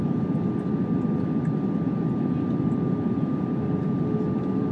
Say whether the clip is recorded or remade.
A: recorded